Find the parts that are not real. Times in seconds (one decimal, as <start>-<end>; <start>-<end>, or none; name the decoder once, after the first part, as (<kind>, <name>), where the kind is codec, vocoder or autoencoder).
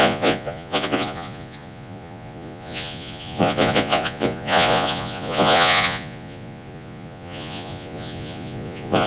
0.0-9.1 (vocoder, Vocos)